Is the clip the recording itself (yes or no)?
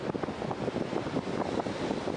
yes